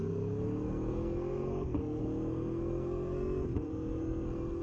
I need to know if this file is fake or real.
fake